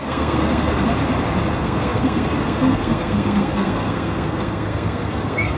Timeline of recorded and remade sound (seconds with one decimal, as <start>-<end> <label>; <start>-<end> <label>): 0.0-0.9 remade; 0.9-1.5 recorded; 1.5-5.6 remade